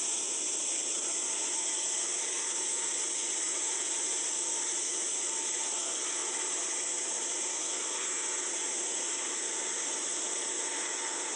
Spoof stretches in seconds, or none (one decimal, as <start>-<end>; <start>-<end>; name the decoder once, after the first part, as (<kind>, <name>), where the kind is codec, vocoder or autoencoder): none